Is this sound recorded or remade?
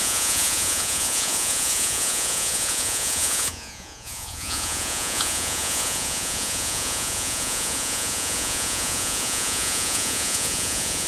remade